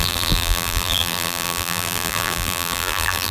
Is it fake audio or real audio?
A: fake